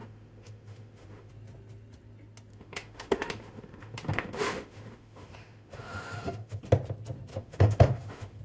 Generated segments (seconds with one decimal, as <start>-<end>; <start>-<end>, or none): 0.0-1.3; 2.5-6.6; 7.3-8.4